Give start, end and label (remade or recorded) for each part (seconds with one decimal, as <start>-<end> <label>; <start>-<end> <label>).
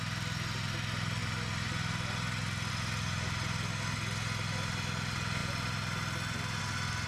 0.0-7.1 recorded